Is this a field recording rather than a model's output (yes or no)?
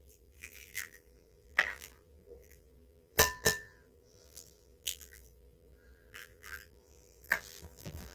no